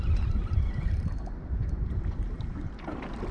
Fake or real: real